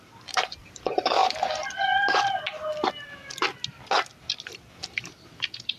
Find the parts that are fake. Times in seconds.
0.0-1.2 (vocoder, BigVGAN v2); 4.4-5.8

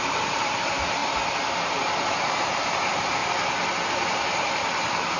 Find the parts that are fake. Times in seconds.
0.0-1.0 (vocoder, BigVGAN v2); 1.7-3.2; 3.9-5.2

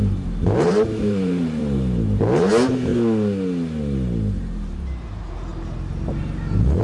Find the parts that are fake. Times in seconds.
0.0-2.9 (vocoder, BigVGAN v2); 5.1-5.5

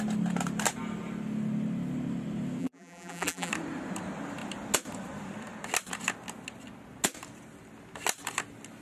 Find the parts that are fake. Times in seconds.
2.6-3.5 (vocoder, BigVGAN v2)

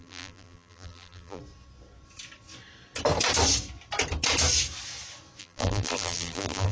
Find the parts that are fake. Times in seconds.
0.0-1.4 (vocoder, BigVGAN v2); 5.4-6.7

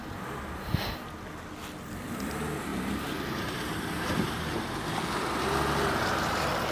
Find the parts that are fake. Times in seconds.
2.7-4.7 (vocoder, BigVGAN v2)